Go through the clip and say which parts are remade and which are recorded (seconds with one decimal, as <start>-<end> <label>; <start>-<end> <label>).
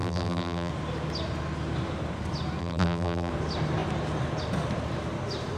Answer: 0.0-0.7 remade; 0.7-2.6 recorded; 2.6-3.3 remade; 3.3-5.6 recorded